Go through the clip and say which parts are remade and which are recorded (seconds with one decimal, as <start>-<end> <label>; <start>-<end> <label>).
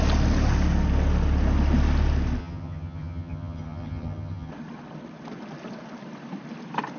0.0-2.4 recorded; 2.4-4.5 remade; 4.5-7.0 recorded